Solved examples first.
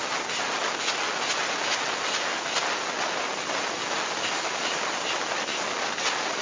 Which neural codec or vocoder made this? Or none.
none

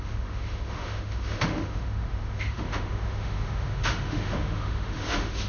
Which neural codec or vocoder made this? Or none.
autoencoder, DAC-VAE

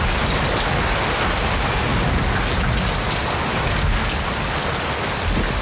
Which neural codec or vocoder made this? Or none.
none